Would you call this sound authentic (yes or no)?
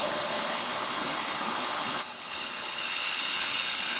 no